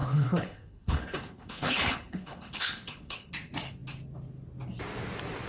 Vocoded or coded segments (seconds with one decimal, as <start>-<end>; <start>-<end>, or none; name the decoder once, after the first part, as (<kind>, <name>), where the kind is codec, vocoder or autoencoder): 0.0-3.3 (codec, HILCodec)